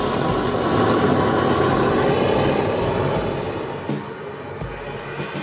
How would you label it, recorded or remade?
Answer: recorded